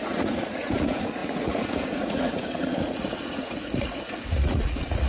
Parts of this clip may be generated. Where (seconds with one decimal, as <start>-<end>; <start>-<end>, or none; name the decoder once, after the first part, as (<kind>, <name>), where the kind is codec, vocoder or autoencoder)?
0.0-5.1 (vocoder, Vocos)